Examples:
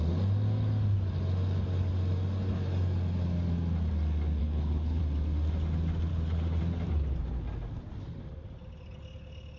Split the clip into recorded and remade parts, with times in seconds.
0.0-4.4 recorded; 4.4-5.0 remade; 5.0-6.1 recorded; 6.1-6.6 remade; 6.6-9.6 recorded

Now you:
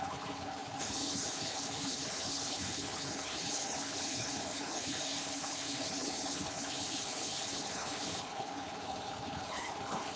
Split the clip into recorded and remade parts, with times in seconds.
0.0-10.2 remade

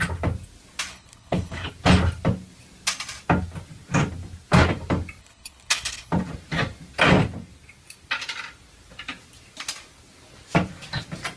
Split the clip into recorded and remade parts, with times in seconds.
0.0-0.9 recorded; 0.9-1.7 remade; 1.7-5.2 recorded; 5.2-6.1 remade; 6.1-11.4 recorded

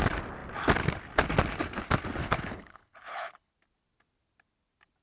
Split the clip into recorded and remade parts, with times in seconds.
0.0-2.2 recorded; 2.2-3.5 remade; 3.5-5.0 recorded

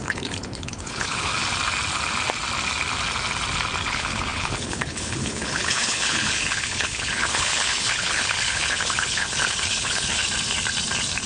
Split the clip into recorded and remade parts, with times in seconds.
0.0-1.3 remade; 1.3-3.9 recorded; 3.9-10.2 remade; 10.2-11.3 recorded

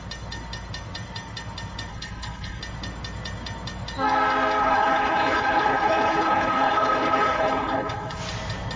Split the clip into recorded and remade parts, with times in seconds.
0.0-1.9 recorded; 1.9-2.6 remade; 2.6-4.6 recorded; 4.6-8.2 remade; 8.2-8.8 recorded

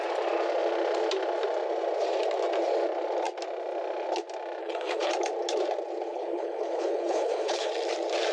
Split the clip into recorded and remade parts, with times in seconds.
0.0-4.6 recorded; 4.6-5.1 remade; 5.1-6.1 recorded; 6.1-7.7 remade; 7.7-8.3 recorded

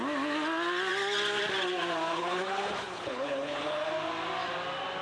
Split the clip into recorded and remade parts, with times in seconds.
0.0-2.1 recorded; 2.1-3.9 remade; 3.9-5.0 recorded